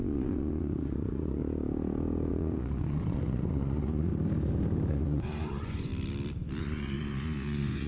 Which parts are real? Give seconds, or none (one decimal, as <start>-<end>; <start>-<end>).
1.4-2.3; 4.1-4.9; 5.9-6.6